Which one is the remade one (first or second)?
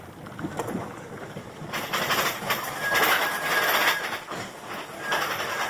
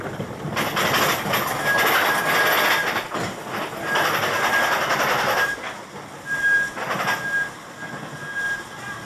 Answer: first